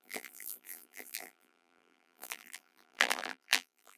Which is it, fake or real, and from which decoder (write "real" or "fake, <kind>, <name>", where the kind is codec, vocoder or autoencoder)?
fake, vocoder, BigVGAN v2